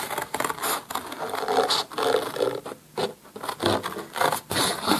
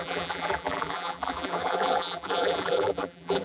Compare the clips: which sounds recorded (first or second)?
first